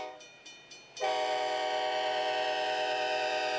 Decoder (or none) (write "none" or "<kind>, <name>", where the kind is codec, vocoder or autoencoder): none